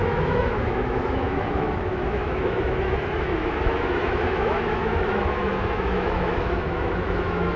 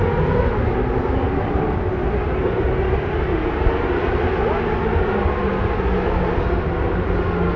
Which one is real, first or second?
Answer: second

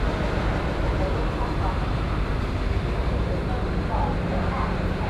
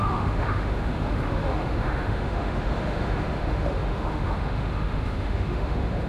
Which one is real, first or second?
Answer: first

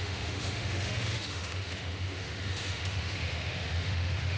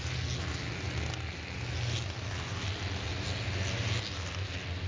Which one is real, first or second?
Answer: second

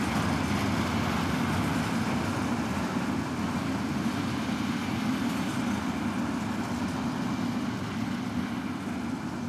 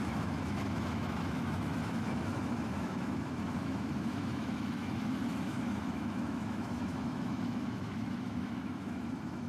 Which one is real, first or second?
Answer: first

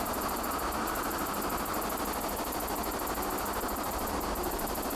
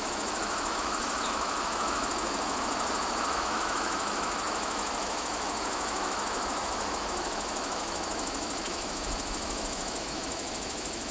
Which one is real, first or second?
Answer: first